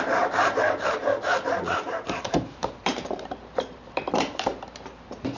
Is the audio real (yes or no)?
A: no